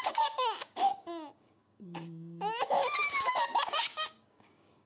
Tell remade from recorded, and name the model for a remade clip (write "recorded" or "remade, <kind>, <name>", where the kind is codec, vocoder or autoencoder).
remade, codec, DAC